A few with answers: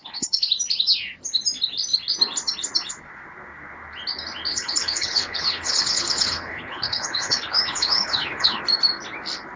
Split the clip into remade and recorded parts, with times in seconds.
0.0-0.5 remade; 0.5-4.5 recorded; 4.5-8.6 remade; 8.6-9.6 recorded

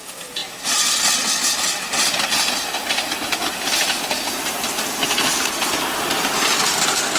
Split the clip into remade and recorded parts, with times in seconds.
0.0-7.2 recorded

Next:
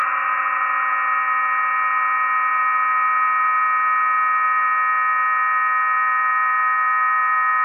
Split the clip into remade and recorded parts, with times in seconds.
0.0-7.6 recorded

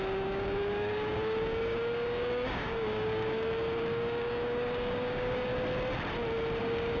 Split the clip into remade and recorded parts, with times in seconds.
0.0-5.5 remade; 5.5-6.6 recorded; 6.6-7.0 remade

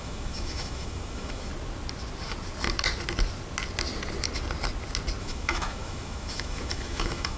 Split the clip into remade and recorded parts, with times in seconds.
0.0-1.5 remade; 1.5-5.2 recorded; 5.2-7.4 remade

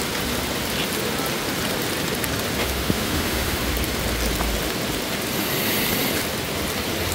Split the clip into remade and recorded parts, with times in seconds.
0.0-2.6 recorded; 2.6-3.6 remade; 3.6-7.1 recorded